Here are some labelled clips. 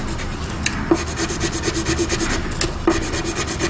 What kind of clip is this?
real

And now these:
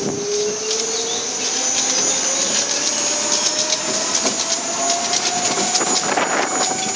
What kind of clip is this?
real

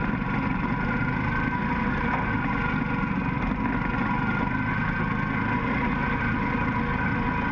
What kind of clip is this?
real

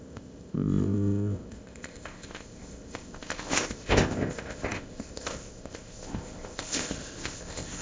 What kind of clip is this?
fake